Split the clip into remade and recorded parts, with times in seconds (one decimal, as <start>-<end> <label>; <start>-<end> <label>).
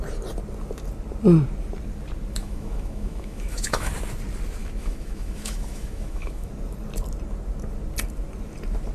0.0-2.4 recorded; 2.4-3.9 remade; 3.9-4.6 recorded; 4.6-6.5 remade; 6.5-8.9 recorded